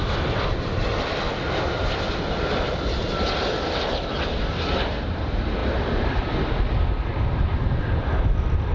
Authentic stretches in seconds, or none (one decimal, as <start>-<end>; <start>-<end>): 0.0-8.7